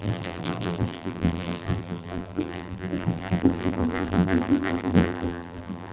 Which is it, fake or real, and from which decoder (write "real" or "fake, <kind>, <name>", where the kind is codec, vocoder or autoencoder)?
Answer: fake, vocoder, BigVGAN v2